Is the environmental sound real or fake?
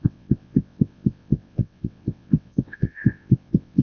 fake